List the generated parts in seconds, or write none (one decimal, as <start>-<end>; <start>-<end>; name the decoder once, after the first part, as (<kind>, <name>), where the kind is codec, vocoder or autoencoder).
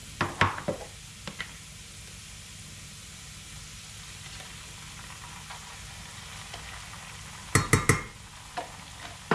none